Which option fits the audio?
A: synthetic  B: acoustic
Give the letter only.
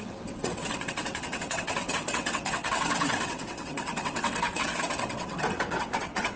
A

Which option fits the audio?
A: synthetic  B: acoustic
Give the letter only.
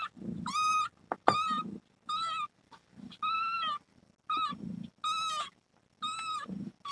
B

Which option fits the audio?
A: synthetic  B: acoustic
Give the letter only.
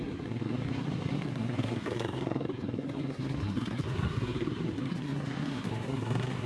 A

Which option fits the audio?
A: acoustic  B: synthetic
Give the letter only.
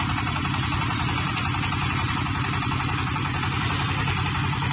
B